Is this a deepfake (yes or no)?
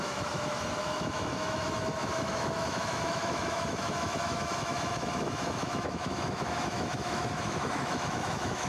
yes